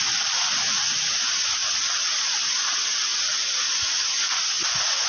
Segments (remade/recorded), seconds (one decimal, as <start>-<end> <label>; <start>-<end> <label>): 0.0-5.1 recorded